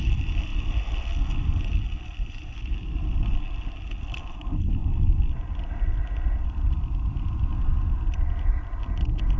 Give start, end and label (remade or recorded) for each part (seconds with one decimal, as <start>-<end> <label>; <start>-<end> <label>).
0.0-0.5 recorded; 0.5-2.6 remade; 2.6-4.8 recorded; 4.8-5.7 remade; 5.7-9.4 recorded